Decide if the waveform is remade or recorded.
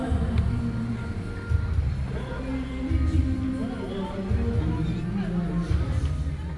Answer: recorded